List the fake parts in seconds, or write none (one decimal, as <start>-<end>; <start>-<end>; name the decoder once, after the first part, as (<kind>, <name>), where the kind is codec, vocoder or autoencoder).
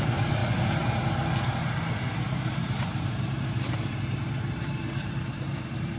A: 0.0-0.4 (vocoder, BigVGAN v2); 2.4-6.0